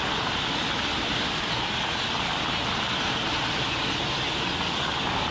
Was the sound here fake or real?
real